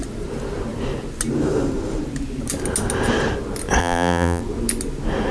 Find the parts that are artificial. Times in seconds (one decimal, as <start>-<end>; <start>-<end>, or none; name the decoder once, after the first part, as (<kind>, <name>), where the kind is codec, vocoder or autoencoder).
3.8-4.4 (vocoder, BigVGAN v2)